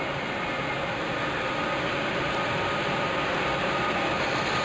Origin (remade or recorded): recorded